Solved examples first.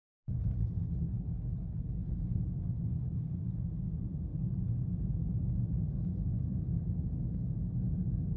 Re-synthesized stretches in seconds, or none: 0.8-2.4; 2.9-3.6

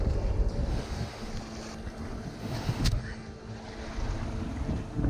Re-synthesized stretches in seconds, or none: 0.7-1.3; 2.4-3.0

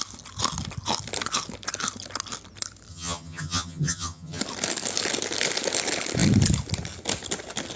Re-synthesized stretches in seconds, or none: 2.9-4.4

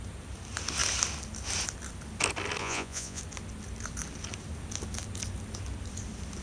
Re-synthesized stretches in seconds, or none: 2.6-3.2

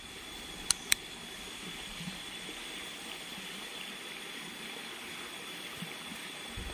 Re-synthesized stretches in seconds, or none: none

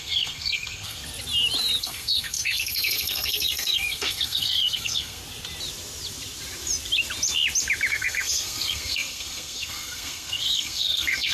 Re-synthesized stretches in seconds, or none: 0.0-1.0; 1.8-5.2; 7.9-11.3

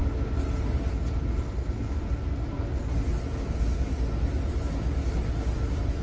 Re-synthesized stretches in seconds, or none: none